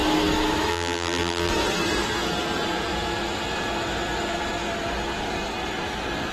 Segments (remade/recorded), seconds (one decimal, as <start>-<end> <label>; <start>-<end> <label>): 0.0-0.7 recorded; 0.7-1.5 remade; 1.5-6.3 recorded